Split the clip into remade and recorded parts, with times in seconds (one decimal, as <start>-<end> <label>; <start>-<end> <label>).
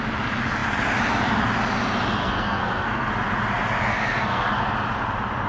0.0-2.2 recorded; 2.2-3.1 remade; 3.1-3.9 recorded; 3.9-4.6 remade; 4.6-5.5 recorded